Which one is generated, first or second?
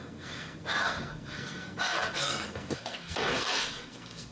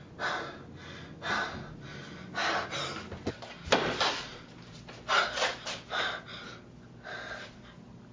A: first